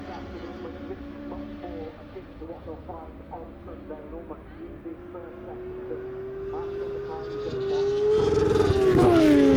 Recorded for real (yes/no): yes